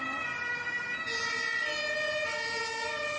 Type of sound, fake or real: real